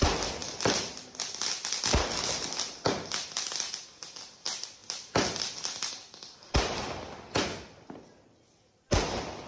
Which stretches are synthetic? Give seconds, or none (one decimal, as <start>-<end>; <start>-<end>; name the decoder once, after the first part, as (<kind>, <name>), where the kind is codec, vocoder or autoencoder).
none